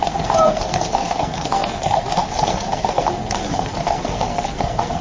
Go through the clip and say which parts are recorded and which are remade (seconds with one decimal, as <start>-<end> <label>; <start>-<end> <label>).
0.0-5.0 remade